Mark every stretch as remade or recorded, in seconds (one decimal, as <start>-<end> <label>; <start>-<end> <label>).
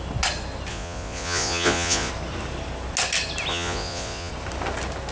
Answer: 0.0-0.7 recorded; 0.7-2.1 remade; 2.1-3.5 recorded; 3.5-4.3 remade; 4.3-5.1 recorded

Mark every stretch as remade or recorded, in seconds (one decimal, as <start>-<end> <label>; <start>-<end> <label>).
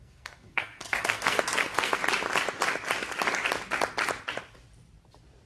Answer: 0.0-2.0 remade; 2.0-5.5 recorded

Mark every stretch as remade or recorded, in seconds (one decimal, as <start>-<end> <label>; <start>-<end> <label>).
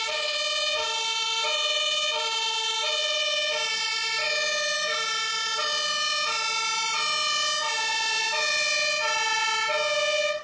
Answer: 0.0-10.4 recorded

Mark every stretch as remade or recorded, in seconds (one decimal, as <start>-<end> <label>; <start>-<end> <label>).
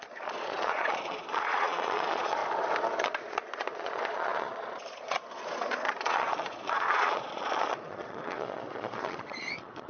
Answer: 0.0-2.4 remade; 2.4-3.0 recorded; 3.0-9.9 remade